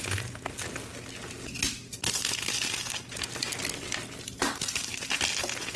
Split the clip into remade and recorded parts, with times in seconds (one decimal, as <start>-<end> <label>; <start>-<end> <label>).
0.0-5.8 recorded